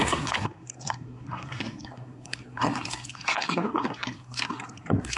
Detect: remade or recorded remade